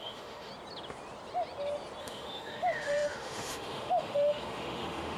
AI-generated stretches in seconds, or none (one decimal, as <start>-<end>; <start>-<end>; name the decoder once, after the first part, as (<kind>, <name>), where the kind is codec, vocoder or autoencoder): 0.0-0.5 (autoencoder, DAC-VAE); 2.0-5.2